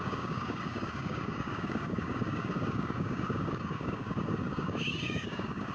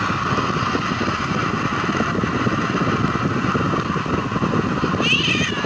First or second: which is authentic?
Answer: second